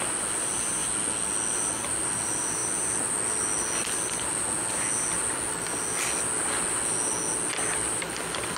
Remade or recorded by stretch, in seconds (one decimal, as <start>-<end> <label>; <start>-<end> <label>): 0.0-8.6 recorded